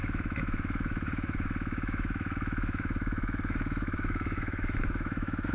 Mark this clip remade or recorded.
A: remade